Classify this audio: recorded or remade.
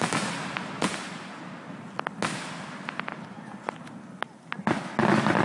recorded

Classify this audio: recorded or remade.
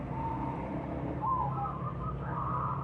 remade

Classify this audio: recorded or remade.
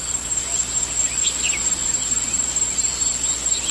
recorded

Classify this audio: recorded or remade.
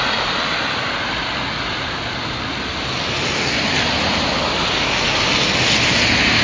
recorded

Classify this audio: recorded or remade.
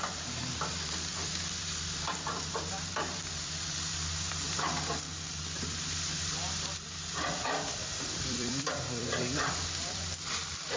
remade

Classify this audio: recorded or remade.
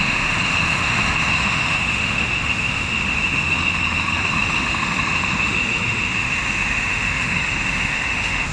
remade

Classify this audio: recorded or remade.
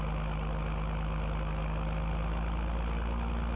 recorded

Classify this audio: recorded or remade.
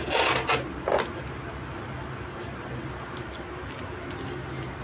recorded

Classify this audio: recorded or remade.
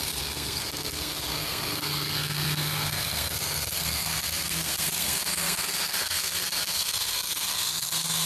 remade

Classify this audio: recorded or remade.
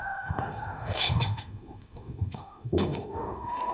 remade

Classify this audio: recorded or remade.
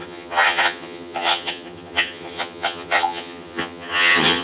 remade